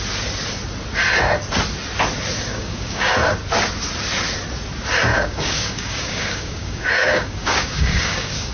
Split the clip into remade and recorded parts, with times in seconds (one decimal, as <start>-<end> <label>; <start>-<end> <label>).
0.0-2.5 recorded; 2.5-3.1 remade; 3.1-5.1 recorded; 5.1-8.5 remade